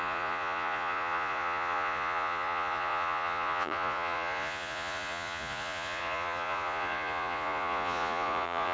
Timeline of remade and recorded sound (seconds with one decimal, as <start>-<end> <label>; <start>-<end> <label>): 0.0-8.7 remade